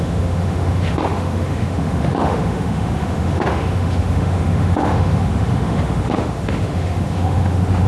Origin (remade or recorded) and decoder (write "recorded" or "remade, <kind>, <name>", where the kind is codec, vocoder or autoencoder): remade, autoencoder, DAC-VAE